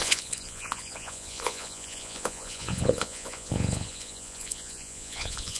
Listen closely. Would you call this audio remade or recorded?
remade